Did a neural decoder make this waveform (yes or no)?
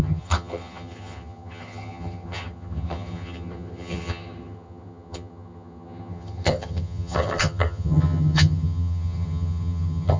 yes